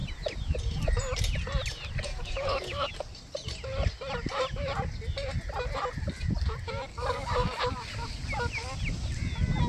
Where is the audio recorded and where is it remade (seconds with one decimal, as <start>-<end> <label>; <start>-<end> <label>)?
0.0-2.1 recorded; 2.1-2.9 remade; 2.9-6.9 recorded; 6.9-7.6 remade; 7.6-9.7 recorded

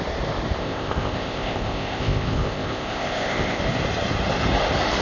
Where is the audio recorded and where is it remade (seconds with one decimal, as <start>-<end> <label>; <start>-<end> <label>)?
0.0-0.6 recorded; 0.6-3.6 remade; 3.6-5.0 recorded

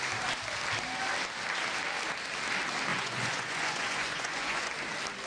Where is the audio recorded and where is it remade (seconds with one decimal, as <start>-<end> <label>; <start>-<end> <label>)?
0.0-2.9 recorded; 2.9-4.7 remade; 4.7-5.3 recorded